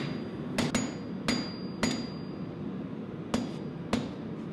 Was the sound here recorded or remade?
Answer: recorded